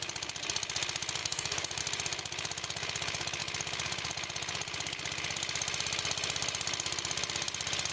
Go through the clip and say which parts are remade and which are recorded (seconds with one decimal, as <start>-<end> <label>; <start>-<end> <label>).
0.0-1.2 recorded; 1.2-1.8 remade; 1.8-7.9 recorded